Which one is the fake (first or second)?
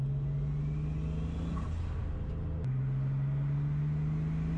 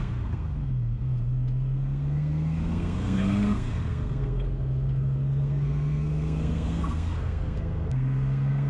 second